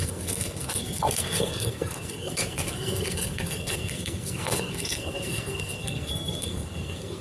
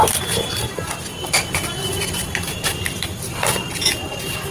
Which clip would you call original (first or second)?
second